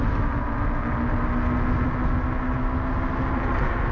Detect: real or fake real